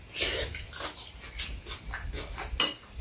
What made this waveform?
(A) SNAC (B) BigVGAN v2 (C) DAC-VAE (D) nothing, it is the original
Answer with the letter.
D